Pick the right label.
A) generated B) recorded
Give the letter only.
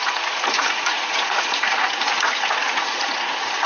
A